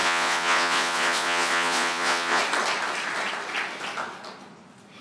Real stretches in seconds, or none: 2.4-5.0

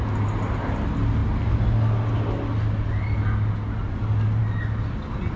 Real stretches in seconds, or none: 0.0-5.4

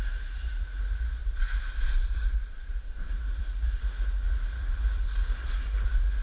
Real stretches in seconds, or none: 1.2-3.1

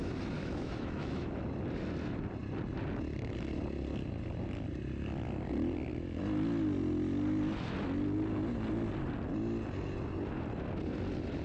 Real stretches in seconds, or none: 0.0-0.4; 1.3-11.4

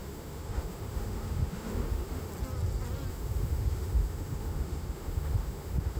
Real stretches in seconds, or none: 2.3-3.1

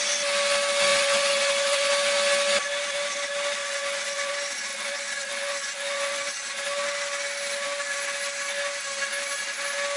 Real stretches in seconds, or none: 0.0-0.9; 1.9-3.6; 4.3-4.7; 6.3-10.0